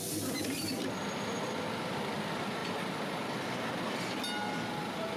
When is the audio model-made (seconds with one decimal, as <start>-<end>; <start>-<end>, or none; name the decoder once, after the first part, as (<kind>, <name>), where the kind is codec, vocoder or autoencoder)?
none